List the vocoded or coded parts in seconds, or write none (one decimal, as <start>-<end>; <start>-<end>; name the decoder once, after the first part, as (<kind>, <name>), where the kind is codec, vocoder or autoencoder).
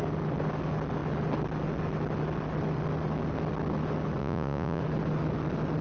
4.2-4.8 (vocoder, Vocos)